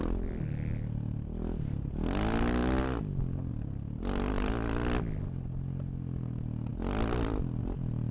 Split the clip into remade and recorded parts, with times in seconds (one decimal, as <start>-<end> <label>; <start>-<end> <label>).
0.0-8.1 recorded